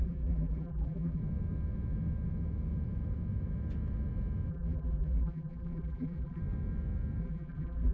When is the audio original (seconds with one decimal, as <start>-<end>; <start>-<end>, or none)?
1.2-4.5; 6.4-7.2